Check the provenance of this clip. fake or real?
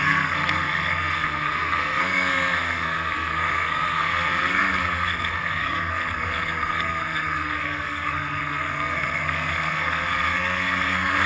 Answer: fake